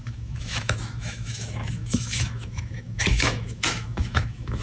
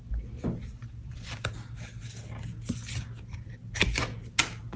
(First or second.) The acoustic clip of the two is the second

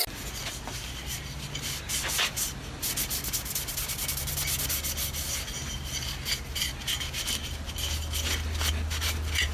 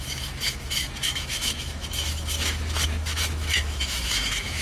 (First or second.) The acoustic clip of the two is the first